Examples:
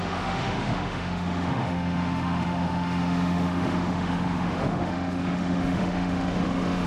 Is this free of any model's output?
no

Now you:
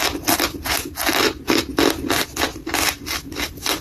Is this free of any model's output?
yes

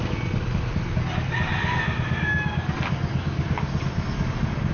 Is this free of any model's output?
yes